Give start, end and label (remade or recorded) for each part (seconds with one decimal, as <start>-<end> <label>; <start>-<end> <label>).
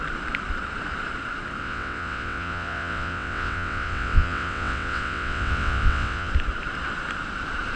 0.0-1.6 recorded; 1.6-6.3 remade; 6.3-7.8 recorded